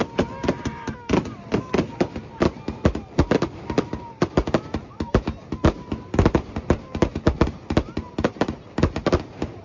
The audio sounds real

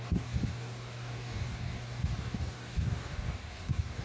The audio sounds fake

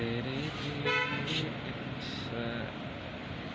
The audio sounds real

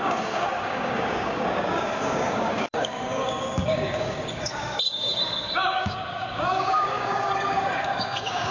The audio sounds fake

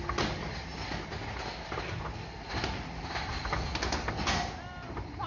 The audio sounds real